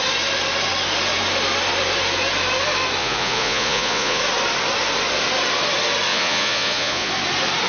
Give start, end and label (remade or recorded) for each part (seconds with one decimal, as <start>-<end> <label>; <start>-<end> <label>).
0.0-3.0 recorded; 3.0-4.2 remade; 4.2-6.1 recorded; 6.1-7.1 remade; 7.1-7.7 recorded